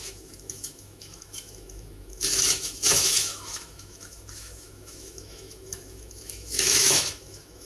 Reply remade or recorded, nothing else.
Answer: remade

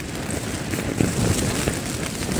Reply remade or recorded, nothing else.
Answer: recorded